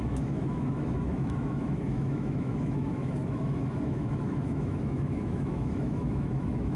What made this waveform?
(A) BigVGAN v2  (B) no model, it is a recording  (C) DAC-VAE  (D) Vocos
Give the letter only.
C